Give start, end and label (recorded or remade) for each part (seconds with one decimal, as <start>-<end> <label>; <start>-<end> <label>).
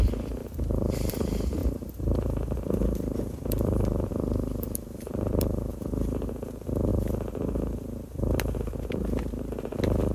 0.0-0.4 recorded; 0.4-1.1 remade; 1.1-1.6 recorded; 1.6-5.7 remade; 5.7-10.1 recorded